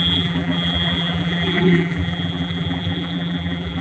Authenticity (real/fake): fake